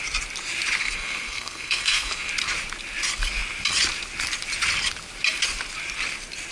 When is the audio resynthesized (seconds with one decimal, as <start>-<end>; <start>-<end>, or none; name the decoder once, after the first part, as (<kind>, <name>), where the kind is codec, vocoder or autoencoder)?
0.8-2.3 (codec, SNAC)